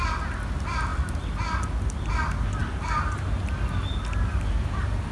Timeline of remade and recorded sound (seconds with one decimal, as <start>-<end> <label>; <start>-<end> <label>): 0.0-5.1 recorded